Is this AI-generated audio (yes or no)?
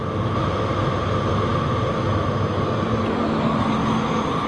no